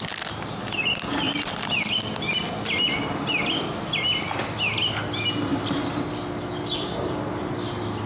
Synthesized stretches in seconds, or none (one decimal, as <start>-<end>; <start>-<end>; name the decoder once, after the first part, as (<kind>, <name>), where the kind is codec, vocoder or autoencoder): none